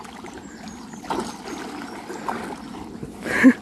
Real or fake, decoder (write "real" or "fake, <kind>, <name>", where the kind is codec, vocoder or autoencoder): real